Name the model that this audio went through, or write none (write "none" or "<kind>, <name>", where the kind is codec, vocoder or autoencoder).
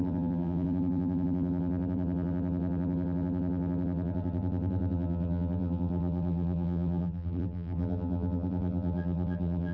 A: vocoder, BigVGAN v2